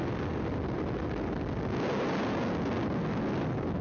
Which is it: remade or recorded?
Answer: recorded